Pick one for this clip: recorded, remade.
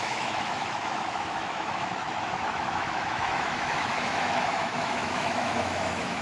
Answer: remade